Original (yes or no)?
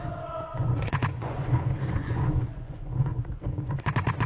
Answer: no